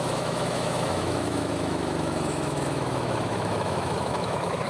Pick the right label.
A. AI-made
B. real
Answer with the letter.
A